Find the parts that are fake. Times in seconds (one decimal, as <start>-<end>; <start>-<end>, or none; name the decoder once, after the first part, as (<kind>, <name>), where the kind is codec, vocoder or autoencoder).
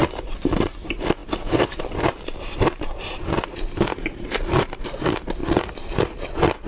0.0-5.4 (vocoder, BigVGAN v2)